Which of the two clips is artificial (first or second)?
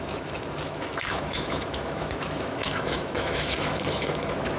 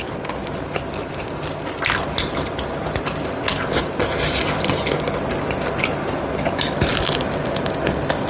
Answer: first